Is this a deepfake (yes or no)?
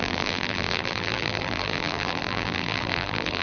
yes